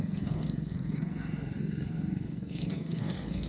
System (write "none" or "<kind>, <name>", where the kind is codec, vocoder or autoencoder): codec, SNAC